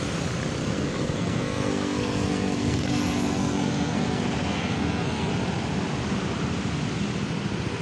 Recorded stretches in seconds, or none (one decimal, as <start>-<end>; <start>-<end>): 0.0-0.6; 5.3-7.8

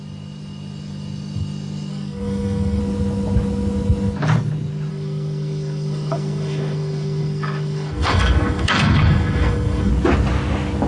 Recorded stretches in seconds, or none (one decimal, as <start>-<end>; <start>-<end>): 0.0-1.9; 2.8-4.9; 9.9-10.9